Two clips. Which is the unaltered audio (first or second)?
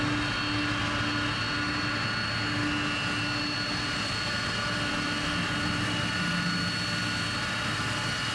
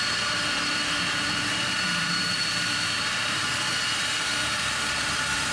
first